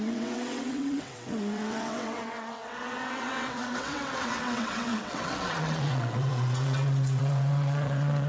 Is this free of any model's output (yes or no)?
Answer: no